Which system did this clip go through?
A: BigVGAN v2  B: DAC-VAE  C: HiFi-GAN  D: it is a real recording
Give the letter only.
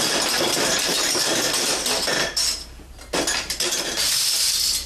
A